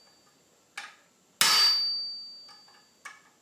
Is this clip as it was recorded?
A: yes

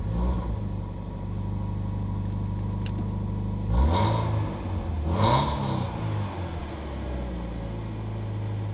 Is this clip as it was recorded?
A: yes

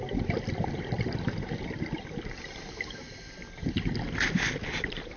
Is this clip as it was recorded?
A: yes